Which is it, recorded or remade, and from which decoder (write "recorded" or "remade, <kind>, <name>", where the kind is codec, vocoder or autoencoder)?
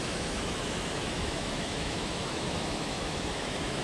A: remade, autoencoder, DAC-VAE